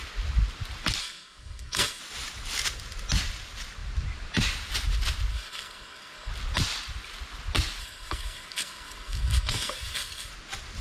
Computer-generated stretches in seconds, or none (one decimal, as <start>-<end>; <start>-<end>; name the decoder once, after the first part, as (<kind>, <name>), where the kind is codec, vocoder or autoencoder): 1.0-2.0 (codec, SNAC); 5.3-6.3; 7.8-10.3